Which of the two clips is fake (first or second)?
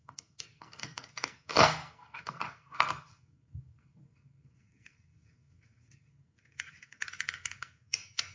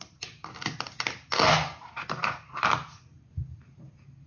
first